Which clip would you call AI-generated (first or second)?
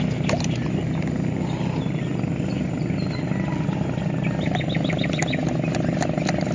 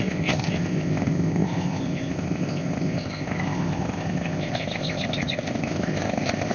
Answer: second